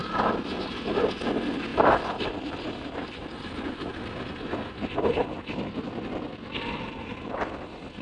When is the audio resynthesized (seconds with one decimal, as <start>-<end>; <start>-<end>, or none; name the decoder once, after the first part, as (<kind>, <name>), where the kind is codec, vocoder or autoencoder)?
0.0-0.8 (vocoder, BigVGAN v2); 1.7-3.6